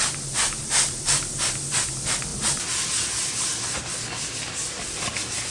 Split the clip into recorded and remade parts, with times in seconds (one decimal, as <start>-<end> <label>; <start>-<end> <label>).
0.0-5.5 recorded